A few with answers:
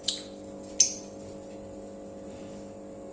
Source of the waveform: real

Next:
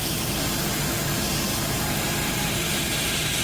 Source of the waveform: fake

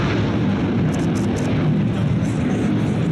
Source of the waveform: real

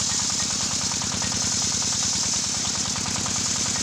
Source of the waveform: real